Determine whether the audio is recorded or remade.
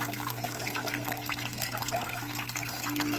remade